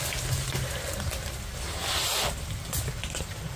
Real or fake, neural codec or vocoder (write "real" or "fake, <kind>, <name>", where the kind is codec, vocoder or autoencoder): real